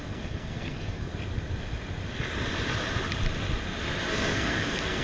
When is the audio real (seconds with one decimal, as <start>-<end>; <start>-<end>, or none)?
1.1-4.1